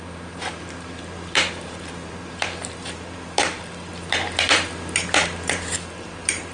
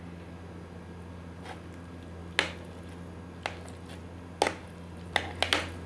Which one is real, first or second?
second